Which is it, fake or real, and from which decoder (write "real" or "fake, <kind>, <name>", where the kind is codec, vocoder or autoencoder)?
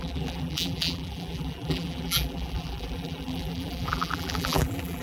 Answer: fake, vocoder, BigVGAN v2